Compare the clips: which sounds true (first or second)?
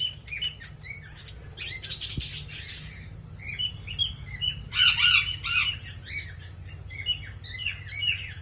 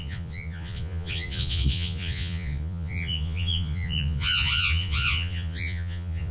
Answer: first